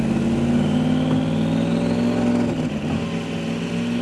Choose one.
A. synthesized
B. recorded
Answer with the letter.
B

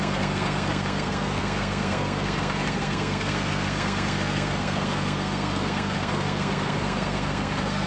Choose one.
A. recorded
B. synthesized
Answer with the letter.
B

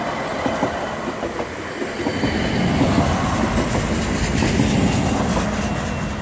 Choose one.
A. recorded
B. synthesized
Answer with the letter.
A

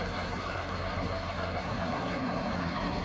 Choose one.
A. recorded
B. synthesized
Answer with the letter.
B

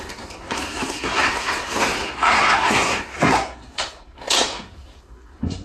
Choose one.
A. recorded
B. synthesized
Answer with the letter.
B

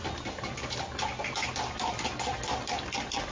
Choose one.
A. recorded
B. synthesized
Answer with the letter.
A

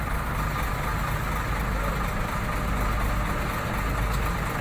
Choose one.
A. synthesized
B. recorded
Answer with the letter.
B